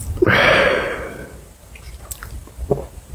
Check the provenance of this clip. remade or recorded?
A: remade